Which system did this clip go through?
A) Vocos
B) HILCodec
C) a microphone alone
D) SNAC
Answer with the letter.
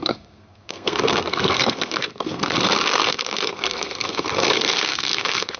D